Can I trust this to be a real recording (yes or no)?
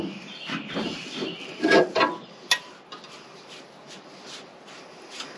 yes